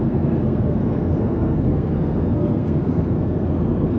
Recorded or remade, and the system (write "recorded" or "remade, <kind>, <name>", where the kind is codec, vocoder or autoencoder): remade, codec, SNAC